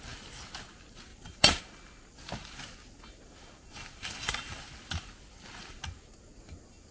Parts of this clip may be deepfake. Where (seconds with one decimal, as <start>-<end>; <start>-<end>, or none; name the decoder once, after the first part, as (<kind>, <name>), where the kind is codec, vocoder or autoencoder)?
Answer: 1.1-1.6 (vocoder, BigVGAN v2)